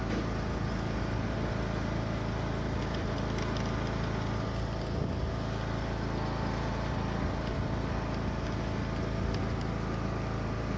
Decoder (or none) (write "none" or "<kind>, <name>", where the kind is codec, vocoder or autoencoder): none